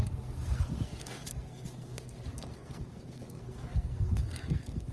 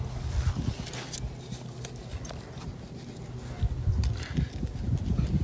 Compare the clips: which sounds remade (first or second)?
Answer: first